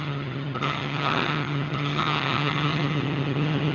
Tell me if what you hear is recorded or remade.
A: remade